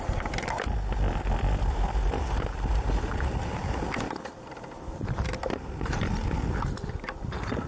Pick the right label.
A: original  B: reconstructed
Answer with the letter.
A